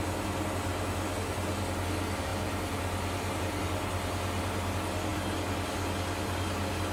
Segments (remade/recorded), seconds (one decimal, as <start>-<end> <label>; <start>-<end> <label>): 0.0-6.9 recorded